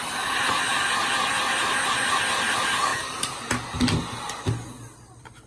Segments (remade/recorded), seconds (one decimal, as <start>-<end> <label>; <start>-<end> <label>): 0.0-2.9 recorded; 2.9-3.4 remade; 3.4-5.5 recorded